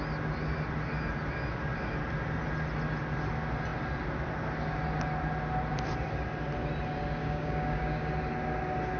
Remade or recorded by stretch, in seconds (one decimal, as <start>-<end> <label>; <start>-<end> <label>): 0.0-7.2 recorded; 7.2-8.1 remade; 8.1-9.0 recorded